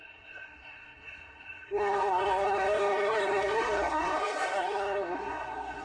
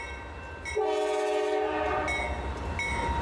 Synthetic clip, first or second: first